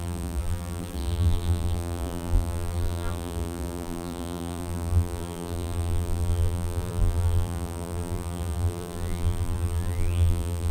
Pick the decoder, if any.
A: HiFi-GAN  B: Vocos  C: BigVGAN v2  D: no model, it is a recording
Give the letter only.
C